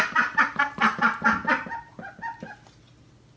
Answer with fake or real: real